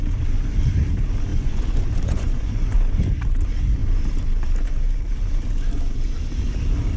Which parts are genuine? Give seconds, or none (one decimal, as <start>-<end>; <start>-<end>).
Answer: 0.0-1.3; 2.8-7.0